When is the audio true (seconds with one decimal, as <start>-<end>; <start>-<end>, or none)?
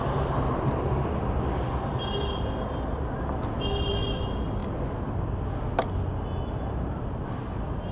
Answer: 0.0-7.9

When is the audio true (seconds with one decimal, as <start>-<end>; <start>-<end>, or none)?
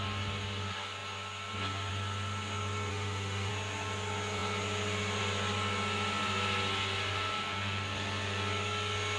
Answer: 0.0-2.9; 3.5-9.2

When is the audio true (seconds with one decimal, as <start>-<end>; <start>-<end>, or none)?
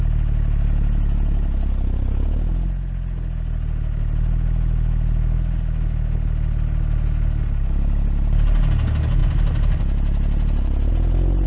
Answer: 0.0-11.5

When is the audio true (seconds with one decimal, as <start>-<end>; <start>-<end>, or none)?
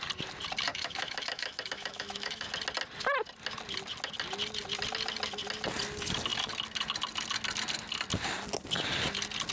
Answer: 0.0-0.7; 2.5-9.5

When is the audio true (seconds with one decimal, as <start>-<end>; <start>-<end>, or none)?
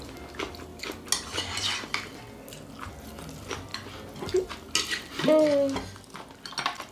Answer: 0.0-6.9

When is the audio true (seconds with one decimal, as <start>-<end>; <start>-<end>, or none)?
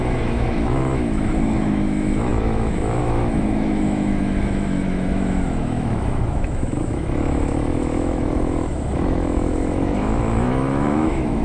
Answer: none